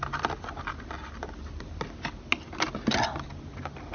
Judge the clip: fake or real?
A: real